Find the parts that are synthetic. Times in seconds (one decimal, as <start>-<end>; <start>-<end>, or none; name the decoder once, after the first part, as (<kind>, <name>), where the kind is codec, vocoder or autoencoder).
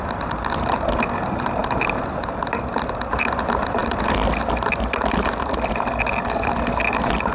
none